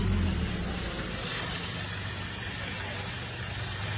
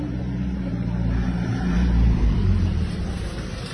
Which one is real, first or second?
first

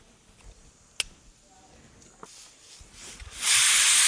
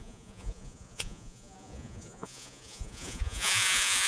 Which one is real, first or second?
first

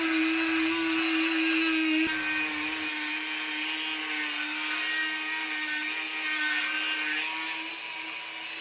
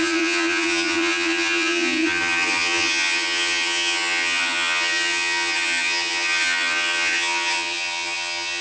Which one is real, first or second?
first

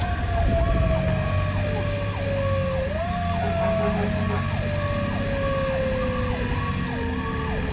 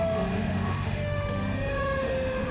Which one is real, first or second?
first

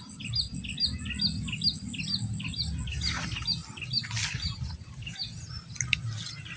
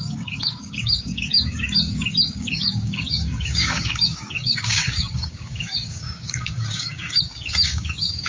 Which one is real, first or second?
first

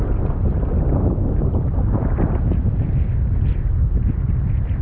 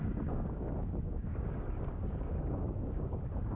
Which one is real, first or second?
first